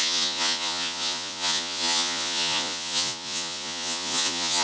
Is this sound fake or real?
fake